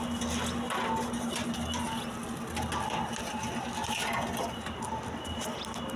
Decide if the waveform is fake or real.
real